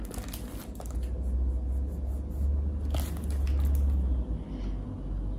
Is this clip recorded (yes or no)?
yes